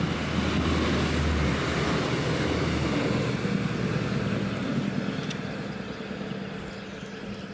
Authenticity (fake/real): real